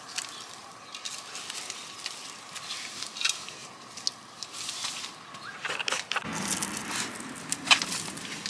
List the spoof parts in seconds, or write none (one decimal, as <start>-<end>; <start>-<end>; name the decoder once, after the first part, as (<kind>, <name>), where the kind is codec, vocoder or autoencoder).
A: none